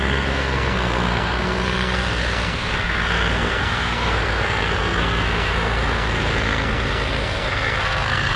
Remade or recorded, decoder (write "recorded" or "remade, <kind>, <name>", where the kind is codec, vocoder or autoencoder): remade, codec, SNAC